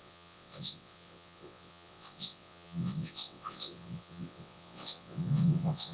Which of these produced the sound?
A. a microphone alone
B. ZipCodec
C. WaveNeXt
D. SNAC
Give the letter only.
C